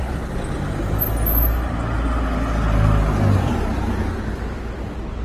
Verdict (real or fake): real